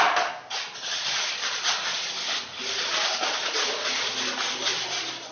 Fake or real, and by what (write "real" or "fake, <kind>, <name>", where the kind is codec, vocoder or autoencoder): real